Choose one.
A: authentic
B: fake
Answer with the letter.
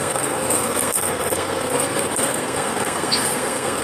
B